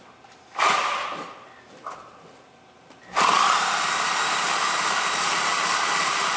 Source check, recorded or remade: recorded